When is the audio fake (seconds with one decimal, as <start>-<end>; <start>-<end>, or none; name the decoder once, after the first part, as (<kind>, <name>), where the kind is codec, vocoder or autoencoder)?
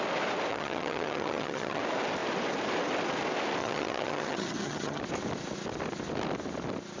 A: 0.5-1.8 (vocoder, HiFi-GAN); 3.6-5.0